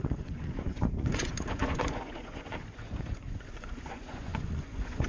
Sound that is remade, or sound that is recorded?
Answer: remade